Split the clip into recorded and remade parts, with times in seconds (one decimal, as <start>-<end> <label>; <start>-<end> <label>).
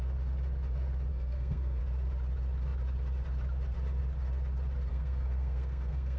0.0-1.1 recorded; 1.1-1.8 remade; 1.8-4.9 recorded; 4.9-6.2 remade